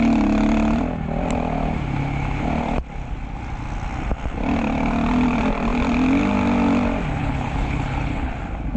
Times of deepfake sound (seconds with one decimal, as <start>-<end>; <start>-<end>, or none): 7.2-8.3